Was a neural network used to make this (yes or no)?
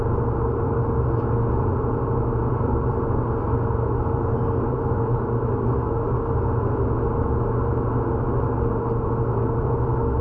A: no